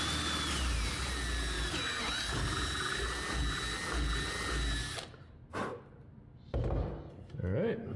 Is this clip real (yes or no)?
yes